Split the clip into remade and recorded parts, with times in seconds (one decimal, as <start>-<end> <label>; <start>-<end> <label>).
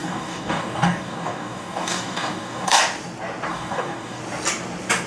0.0-2.8 remade; 2.8-3.5 recorded; 3.5-4.2 remade; 4.2-5.1 recorded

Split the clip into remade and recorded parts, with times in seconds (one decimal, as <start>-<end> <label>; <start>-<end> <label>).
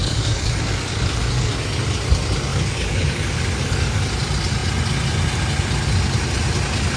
0.0-1.5 remade; 1.5-2.5 recorded; 2.5-4.0 remade; 4.0-7.0 recorded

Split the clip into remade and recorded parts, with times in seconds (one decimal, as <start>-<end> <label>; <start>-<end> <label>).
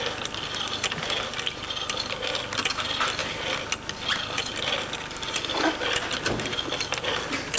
0.0-7.6 recorded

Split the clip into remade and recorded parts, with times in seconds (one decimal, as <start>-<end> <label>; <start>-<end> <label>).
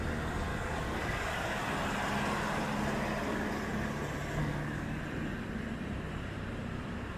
0.0-0.5 recorded; 0.5-1.6 remade; 1.6-4.4 recorded; 4.4-5.0 remade; 5.0-7.2 recorded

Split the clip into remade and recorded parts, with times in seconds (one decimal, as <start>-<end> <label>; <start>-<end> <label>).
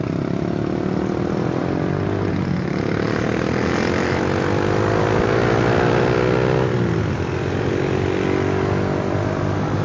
0.0-9.8 recorded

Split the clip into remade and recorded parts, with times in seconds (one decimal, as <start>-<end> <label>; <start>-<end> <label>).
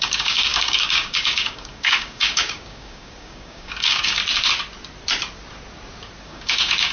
0.0-4.2 remade; 4.2-6.2 recorded; 6.2-6.9 remade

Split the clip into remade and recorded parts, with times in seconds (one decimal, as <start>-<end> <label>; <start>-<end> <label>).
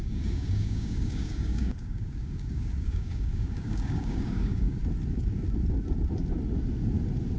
0.0-4.8 remade; 4.8-7.4 recorded